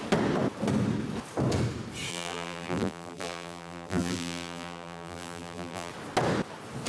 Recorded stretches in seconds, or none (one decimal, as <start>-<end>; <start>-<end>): 0.0-2.1; 5.9-6.9